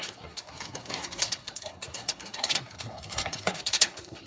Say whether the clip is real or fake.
fake